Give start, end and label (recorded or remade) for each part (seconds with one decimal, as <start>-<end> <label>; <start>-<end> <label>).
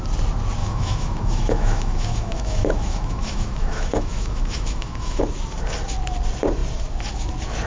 0.0-0.6 recorded; 0.6-5.2 remade; 5.2-7.7 recorded